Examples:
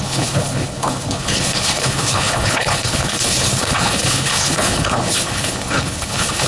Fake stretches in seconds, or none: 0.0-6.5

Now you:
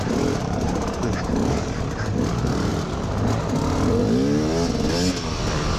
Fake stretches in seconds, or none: 0.0-2.7

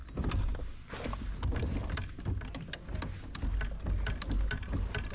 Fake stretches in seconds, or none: 0.0-0.9; 1.8-2.4

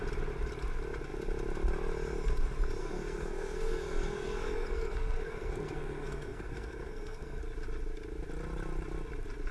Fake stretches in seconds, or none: 2.8-7.4

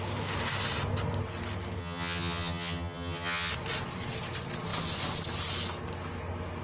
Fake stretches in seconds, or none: 1.8-3.5

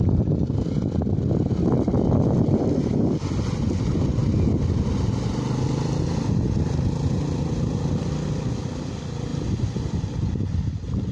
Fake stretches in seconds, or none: none

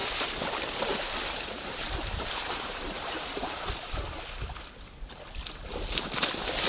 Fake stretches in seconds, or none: 0.0-4.0